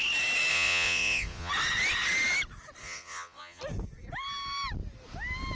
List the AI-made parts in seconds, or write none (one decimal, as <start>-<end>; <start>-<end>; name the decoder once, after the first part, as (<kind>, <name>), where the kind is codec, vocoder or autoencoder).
0.5-1.5 (vocoder, Vocos); 2.8-3.6